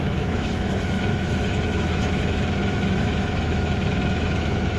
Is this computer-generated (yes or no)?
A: yes